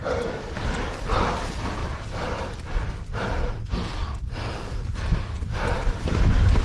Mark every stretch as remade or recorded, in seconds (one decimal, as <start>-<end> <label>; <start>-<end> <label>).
0.0-1.8 recorded; 1.8-3.0 remade; 3.0-6.6 recorded